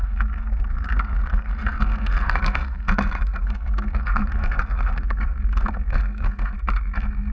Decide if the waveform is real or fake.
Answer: fake